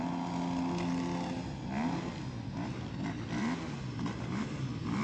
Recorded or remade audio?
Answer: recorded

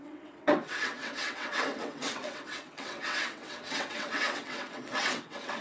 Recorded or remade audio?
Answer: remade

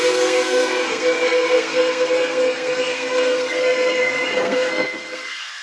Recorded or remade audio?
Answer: remade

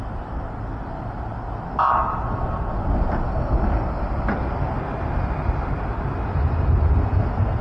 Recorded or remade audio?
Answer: recorded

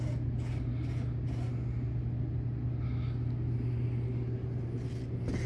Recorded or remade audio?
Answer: recorded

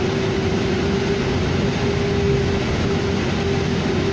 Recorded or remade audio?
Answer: recorded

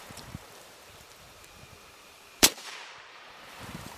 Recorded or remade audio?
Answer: remade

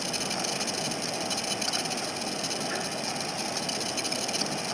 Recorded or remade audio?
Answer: recorded